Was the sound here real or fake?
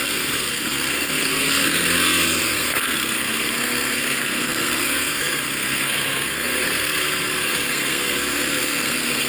fake